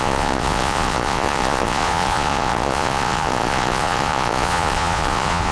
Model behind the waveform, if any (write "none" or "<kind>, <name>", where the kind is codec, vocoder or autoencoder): vocoder, Vocos